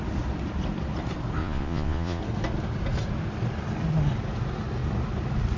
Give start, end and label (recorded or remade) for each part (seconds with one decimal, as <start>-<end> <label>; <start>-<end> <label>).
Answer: 0.0-1.4 recorded; 1.4-2.2 remade; 2.2-5.6 recorded